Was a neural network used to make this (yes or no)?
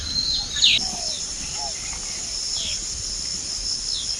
no